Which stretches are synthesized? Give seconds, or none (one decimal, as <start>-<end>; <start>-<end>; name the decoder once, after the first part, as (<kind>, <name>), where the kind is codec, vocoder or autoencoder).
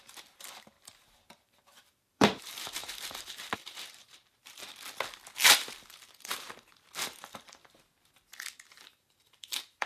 0.0-4.6 (vocoder, BigVGAN v2); 5.4-7.6; 8.6-9.9